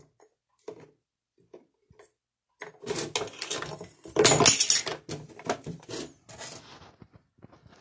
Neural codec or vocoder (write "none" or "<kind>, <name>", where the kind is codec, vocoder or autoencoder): none